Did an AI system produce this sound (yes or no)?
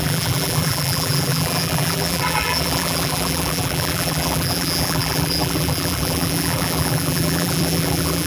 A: yes